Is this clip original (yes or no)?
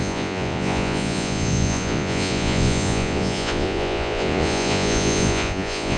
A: no